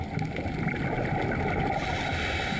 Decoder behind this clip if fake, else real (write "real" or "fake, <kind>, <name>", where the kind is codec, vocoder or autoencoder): real